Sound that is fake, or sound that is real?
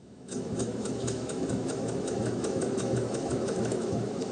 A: fake